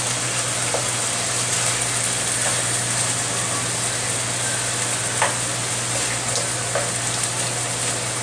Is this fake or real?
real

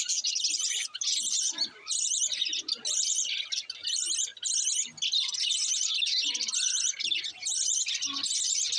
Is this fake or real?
real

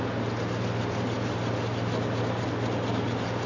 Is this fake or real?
real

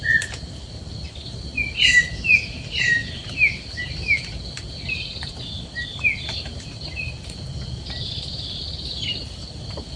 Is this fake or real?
real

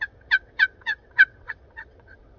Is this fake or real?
fake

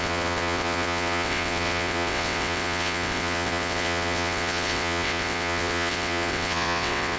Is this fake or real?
fake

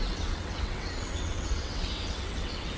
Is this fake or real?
fake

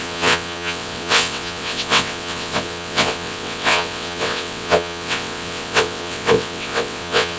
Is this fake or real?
fake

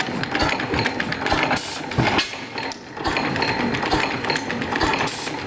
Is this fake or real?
real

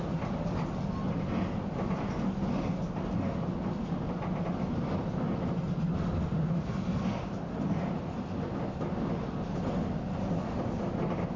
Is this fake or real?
real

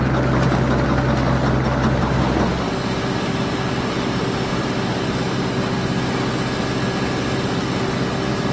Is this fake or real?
real